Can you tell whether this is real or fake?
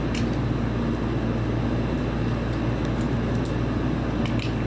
real